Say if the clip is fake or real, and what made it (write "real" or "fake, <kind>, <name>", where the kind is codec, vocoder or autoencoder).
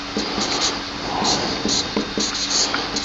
real